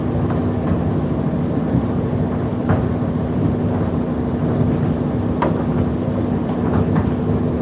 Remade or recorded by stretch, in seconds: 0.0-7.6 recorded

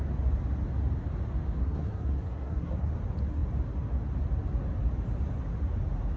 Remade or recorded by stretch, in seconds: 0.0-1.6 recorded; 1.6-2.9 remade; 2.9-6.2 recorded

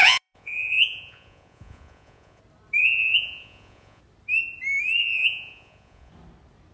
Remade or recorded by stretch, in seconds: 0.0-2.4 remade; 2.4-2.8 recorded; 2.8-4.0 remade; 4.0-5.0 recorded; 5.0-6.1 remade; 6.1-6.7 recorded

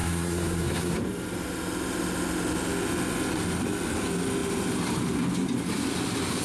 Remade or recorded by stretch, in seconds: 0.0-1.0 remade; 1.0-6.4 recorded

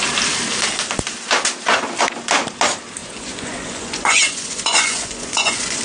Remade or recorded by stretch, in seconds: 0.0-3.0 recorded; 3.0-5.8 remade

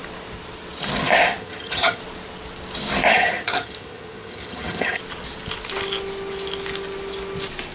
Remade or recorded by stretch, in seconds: 0.0-1.4 recorded; 1.4-2.0 remade; 2.0-3.1 recorded; 3.1-5.0 remade; 5.0-7.7 recorded